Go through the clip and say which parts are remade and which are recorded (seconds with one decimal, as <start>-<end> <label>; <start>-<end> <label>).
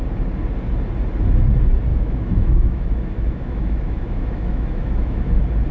0.0-1.9 recorded; 1.9-5.3 remade; 5.3-5.7 recorded